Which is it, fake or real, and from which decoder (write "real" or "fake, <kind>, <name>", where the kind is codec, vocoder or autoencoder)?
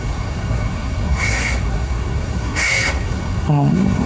fake, codec, SNAC